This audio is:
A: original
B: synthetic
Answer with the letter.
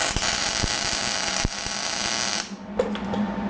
A